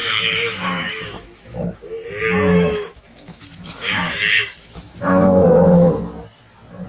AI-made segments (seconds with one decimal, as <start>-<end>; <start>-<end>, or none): 0.0-1.8; 2.5-5.9

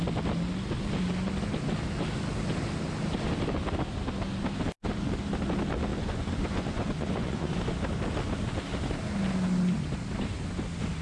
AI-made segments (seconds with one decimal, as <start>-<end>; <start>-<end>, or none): 5.9-7.6

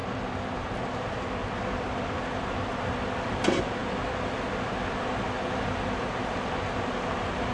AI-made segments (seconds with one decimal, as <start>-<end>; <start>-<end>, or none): none

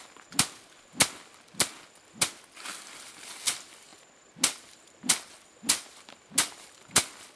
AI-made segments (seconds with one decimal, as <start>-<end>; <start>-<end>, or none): none

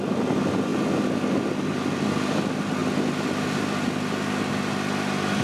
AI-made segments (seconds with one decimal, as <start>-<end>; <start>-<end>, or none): none

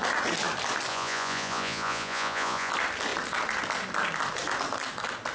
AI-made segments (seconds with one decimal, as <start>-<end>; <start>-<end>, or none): 0.9-2.7

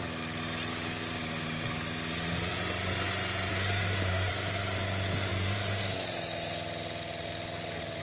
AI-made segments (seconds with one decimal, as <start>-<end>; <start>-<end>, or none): 0.7-2.1; 3.5-4.3

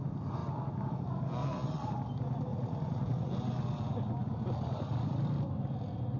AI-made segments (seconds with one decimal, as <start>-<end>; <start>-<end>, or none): 1.4-1.9; 2.5-3.3